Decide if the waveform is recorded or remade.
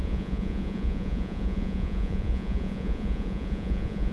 remade